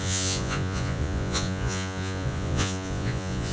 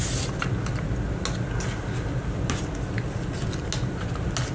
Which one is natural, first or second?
second